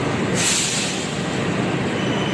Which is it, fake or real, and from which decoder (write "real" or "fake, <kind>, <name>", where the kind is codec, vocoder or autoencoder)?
real